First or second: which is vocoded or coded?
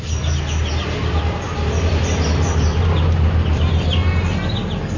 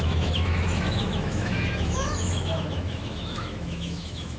second